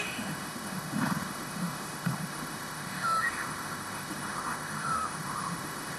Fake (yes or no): yes